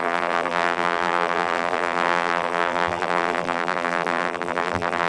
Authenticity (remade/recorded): remade